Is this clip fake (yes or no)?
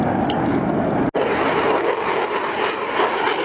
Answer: no